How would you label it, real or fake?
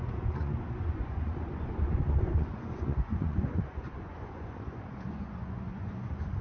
fake